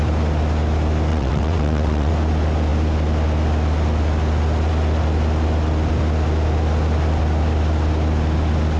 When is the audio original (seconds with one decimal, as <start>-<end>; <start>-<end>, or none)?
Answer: 0.0-1.1; 2.1-8.8